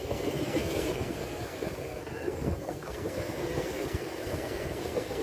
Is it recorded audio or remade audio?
remade